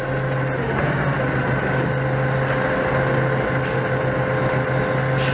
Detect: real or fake real